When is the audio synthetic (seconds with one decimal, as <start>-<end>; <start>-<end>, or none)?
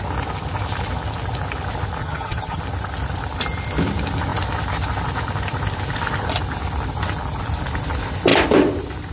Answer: 2.0-2.6